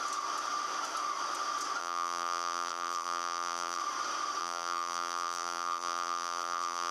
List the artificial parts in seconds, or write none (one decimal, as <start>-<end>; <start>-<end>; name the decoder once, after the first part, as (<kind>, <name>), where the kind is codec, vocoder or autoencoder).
1.8-3.8 (vocoder, BigVGAN v2); 4.4-6.9